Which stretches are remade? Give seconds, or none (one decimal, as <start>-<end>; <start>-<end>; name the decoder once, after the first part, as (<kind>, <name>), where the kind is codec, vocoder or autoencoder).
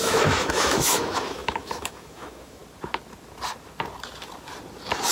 0.0-2.6 (autoencoder, DAC-VAE)